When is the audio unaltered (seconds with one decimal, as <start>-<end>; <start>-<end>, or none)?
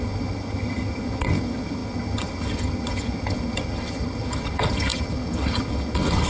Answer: none